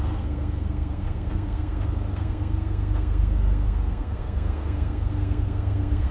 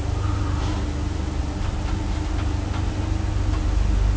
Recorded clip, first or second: second